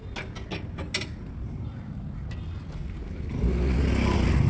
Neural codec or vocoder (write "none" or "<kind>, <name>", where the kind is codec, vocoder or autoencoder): none